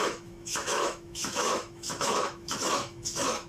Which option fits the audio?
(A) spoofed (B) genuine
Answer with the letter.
A